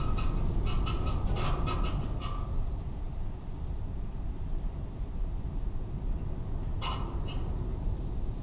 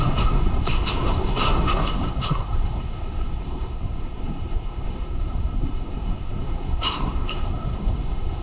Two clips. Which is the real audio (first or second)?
first